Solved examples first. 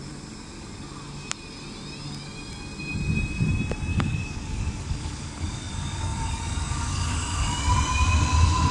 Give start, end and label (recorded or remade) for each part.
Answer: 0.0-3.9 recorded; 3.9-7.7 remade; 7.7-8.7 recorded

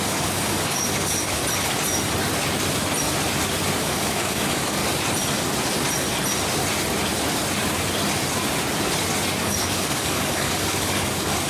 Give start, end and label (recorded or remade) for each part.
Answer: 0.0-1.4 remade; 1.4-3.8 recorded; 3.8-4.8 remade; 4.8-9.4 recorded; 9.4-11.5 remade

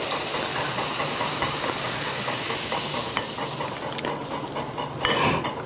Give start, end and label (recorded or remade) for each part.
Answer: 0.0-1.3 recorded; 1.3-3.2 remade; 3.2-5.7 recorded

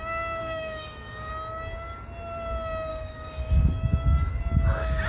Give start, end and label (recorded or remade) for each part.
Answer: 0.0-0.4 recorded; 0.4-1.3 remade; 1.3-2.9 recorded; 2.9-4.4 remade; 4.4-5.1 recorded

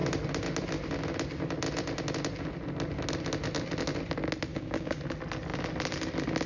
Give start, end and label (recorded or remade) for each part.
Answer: 0.0-4.5 recorded; 4.5-5.0 remade; 5.0-6.5 recorded